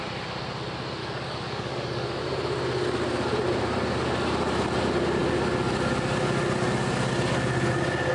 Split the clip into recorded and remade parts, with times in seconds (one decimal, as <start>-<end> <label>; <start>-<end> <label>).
0.0-1.0 recorded; 1.0-2.2 remade; 2.2-8.1 recorded